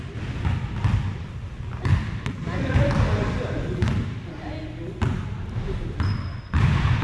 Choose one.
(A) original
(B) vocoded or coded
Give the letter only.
A